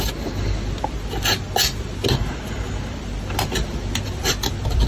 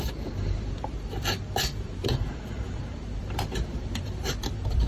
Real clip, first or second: first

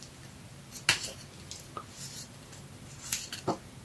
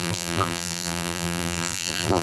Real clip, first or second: first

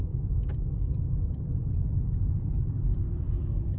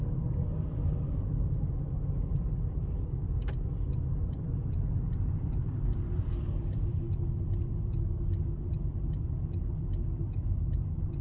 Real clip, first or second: second